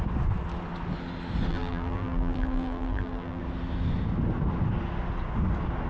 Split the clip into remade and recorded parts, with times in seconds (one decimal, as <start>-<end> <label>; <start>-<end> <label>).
0.0-1.5 recorded; 1.5-3.4 remade; 3.4-5.9 recorded